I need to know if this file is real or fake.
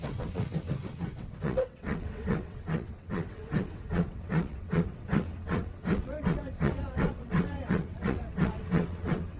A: fake